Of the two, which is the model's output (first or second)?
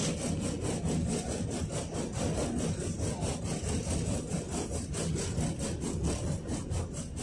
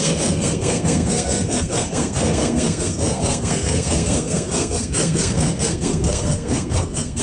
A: second